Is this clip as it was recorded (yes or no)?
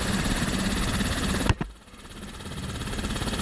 yes